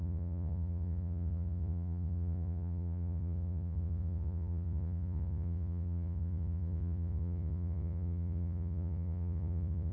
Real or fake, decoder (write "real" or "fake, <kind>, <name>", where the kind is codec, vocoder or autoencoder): fake, vocoder, Vocos